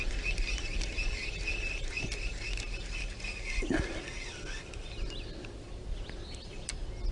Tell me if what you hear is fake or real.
real